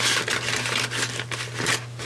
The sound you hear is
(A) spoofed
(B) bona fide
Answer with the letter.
B